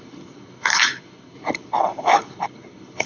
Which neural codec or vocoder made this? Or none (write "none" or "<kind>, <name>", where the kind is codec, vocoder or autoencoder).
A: codec, HILCodec